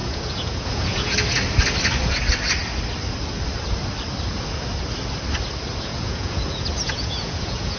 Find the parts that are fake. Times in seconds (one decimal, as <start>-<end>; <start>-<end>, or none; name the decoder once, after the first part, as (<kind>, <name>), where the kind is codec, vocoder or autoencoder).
0.0-1.1 (vocoder, Vocos); 5.8-7.8